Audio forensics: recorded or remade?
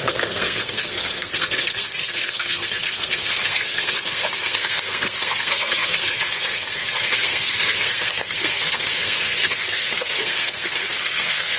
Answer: remade